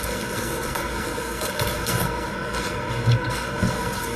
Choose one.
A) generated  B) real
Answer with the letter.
A